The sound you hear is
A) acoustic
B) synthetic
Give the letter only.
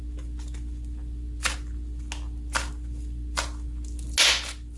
A